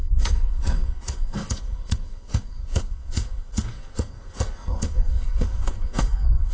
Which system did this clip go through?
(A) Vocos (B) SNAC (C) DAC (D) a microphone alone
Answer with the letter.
B